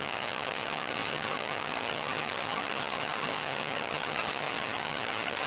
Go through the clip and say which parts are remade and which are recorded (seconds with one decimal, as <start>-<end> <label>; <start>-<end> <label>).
0.0-5.5 remade